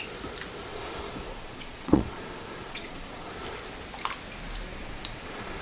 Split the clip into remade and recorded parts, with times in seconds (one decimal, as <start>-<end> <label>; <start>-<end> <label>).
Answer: 0.0-0.7 recorded; 0.7-3.3 remade; 3.3-4.7 recorded; 4.7-5.6 remade